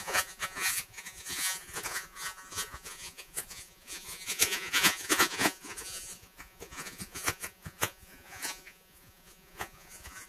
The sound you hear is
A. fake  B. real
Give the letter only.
A